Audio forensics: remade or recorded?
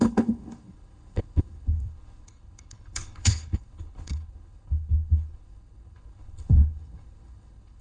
remade